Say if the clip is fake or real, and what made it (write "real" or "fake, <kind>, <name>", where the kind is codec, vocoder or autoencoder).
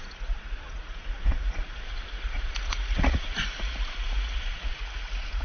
fake, vocoder, Vocos